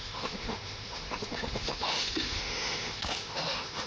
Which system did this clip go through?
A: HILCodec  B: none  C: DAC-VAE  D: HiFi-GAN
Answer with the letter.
C